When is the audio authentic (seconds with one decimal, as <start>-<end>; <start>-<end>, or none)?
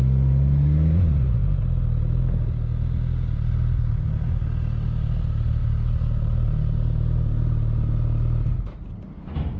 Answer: 0.0-9.6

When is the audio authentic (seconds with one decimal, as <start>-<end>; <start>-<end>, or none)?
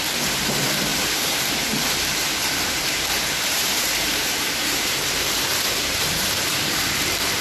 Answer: 0.0-0.9; 1.5-2.4; 6.8-7.4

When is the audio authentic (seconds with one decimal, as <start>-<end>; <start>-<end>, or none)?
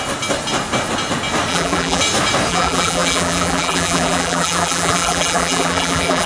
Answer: 0.0-1.5; 2.0-2.5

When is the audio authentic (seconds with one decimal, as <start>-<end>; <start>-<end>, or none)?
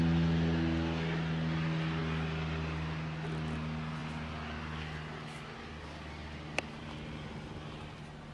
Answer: 0.0-8.3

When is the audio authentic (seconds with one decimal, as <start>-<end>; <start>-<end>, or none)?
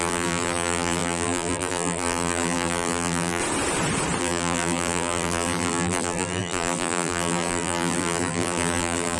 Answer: 3.4-4.2